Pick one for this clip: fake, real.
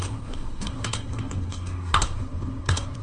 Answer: fake